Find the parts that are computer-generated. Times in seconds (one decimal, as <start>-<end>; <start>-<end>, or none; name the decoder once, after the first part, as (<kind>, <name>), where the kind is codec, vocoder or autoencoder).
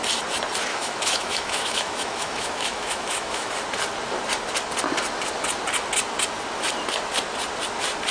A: 0.7-3.5 (autoencoder, DAC-VAE)